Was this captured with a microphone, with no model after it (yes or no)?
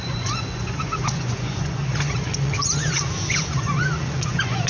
no